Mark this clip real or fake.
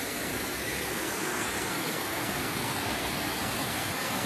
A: fake